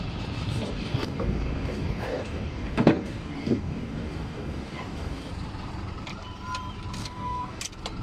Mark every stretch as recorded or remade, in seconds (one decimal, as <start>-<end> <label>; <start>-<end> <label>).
0.0-0.5 recorded; 0.5-5.3 remade; 5.3-7.0 recorded; 7.0-7.6 remade; 7.6-8.0 recorded